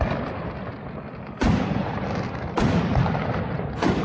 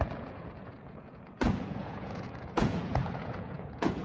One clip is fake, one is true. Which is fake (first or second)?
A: second